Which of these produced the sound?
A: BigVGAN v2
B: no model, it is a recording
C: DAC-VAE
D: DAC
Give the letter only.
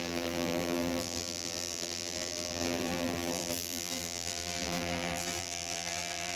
A